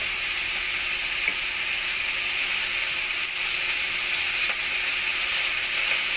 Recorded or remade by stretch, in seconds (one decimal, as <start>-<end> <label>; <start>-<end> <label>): 0.0-6.2 recorded